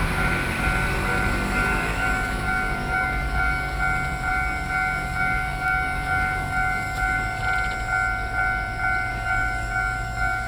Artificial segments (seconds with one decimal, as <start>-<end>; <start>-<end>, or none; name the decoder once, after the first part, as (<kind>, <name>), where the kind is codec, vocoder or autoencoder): 1.1-3.8 (codec, DAC); 4.3-7.4; 9.1-10.5